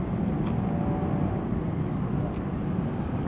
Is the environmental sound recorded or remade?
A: recorded